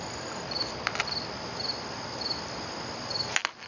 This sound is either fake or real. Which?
real